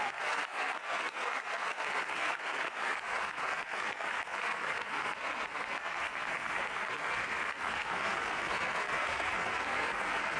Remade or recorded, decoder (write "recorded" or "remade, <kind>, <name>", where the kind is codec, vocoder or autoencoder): remade, codec, SNAC